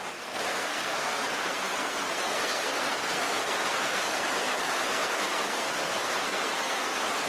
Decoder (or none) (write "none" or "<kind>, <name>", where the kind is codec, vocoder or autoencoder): codec, SNAC